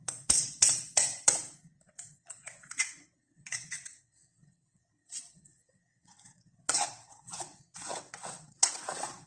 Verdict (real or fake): fake